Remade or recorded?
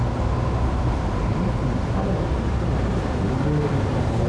recorded